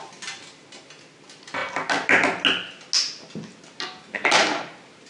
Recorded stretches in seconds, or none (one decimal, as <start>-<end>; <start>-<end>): 0.0-5.1